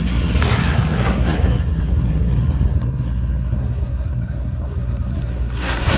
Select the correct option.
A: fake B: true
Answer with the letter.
A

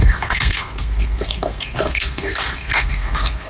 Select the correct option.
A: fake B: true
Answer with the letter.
A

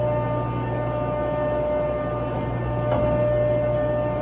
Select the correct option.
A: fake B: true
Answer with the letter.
B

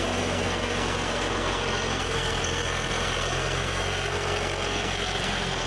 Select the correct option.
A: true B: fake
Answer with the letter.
B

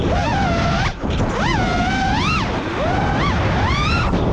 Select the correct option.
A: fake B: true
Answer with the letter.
B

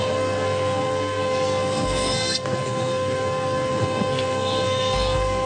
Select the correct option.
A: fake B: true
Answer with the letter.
A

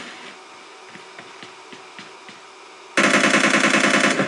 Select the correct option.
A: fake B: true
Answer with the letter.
B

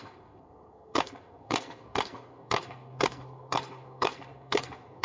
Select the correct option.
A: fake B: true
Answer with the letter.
A